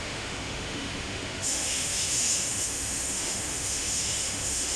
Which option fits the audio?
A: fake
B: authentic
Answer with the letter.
A